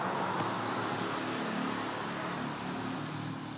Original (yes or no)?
yes